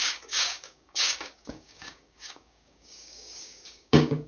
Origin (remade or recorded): remade